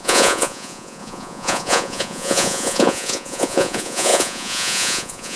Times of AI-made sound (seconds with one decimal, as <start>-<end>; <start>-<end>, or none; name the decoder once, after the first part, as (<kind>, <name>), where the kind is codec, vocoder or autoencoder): 0.0-5.4 (vocoder, Vocos)